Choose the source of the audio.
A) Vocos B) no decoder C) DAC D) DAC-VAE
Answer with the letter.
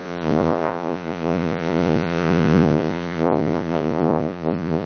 A